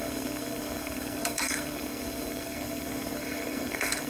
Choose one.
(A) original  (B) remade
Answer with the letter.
B